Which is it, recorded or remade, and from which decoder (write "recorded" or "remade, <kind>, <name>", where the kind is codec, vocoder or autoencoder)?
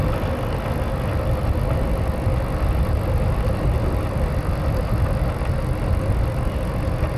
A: recorded